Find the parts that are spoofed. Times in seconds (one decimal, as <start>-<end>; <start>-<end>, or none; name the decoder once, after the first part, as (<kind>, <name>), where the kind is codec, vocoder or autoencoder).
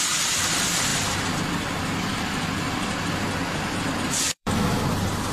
0.0-5.3 (vocoder, BigVGAN v2)